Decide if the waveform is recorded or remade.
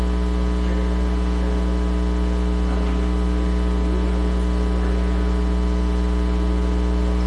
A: recorded